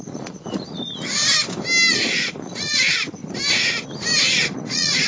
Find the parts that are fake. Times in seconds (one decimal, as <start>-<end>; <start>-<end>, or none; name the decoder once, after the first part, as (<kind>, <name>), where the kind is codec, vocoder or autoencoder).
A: 0.0-1.2 (vocoder, Vocos); 1.9-3.2; 4.3-5.1